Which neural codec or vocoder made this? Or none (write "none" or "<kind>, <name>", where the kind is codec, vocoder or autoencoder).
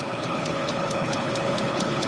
codec, HILCodec